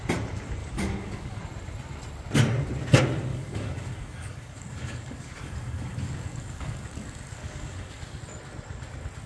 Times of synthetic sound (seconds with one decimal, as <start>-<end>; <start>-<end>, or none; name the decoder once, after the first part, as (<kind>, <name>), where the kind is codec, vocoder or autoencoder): 0.6-1.4 (codec, DAC); 3.3-8.2